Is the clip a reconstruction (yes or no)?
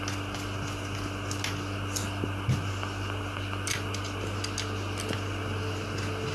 no